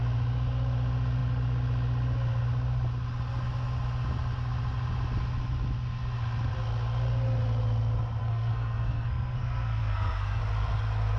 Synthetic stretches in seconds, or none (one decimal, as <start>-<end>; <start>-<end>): 8.2-10.4